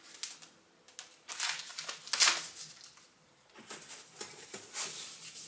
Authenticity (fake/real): real